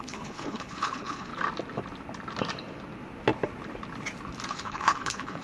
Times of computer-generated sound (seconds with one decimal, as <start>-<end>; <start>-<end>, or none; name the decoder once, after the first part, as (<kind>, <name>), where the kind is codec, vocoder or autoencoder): 0.0-1.3 (codec, HILCodec); 4.5-5.4